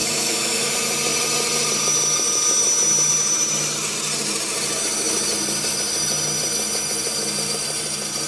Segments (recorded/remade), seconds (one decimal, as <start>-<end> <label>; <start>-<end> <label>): 0.0-0.7 remade; 0.7-8.3 recorded